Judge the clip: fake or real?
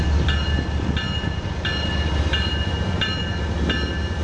real